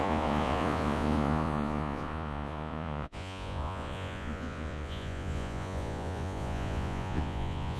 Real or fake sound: fake